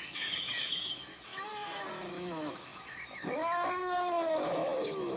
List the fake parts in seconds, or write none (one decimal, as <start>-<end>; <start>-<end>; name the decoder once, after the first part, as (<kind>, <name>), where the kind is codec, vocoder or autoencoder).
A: 0.0-1.5 (autoencoder, DAC-VAE); 2.1-5.2

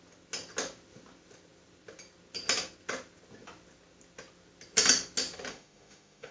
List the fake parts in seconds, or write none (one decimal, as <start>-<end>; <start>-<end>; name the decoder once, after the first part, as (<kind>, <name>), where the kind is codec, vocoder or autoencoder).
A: 5.5-6.3 (autoencoder, DAC-VAE)

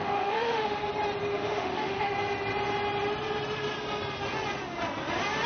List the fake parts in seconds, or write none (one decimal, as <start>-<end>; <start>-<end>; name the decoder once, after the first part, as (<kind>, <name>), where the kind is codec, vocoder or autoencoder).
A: 0.0-0.9 (autoencoder, DAC-VAE); 1.3-2.1

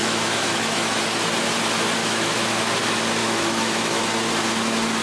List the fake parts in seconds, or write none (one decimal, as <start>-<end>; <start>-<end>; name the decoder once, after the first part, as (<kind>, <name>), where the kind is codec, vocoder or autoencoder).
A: 0.0-1.0 (autoencoder, DAC-VAE); 2.0-2.6; 3.2-4.0

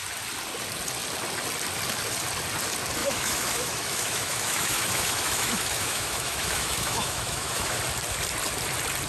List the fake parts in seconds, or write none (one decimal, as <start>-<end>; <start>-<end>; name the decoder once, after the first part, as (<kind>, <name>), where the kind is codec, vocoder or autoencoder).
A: 3.0-7.8 (autoencoder, DAC-VAE)